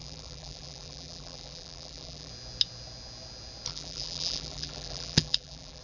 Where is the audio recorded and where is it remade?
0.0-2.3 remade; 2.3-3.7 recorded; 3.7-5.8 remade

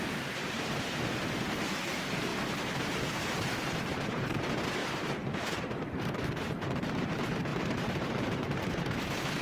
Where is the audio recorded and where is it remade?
0.0-2.3 remade; 2.3-2.9 recorded; 2.9-9.4 remade

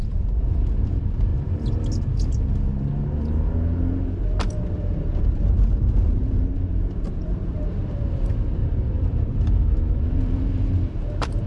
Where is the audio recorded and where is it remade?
0.0-1.3 remade; 1.3-4.4 recorded; 4.4-8.6 remade; 8.6-10.0 recorded; 10.0-11.5 remade

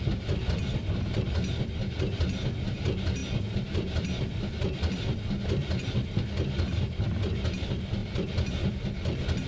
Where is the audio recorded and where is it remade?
0.0-8.0 recorded; 8.0-8.7 remade; 8.7-9.5 recorded

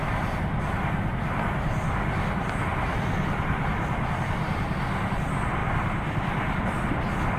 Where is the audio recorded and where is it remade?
0.0-5.6 recorded; 5.6-6.6 remade; 6.6-7.4 recorded

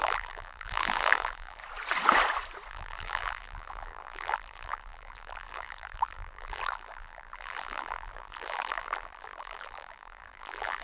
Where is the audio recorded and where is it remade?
0.0-1.6 remade; 1.6-2.7 recorded; 2.7-10.8 remade

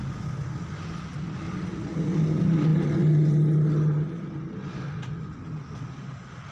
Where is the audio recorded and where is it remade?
0.0-1.1 recorded; 1.1-1.9 remade; 1.9-6.5 recorded

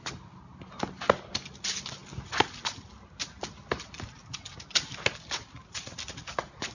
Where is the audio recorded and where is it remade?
0.0-6.7 recorded